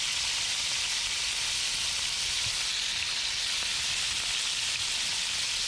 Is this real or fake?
real